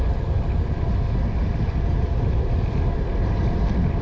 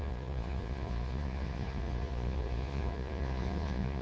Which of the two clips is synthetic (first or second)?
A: second